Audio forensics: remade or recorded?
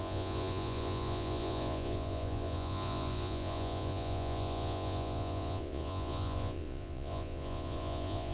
remade